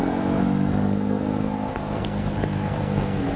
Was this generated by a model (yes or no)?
yes